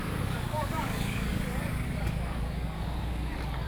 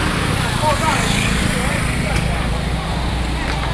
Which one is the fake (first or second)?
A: first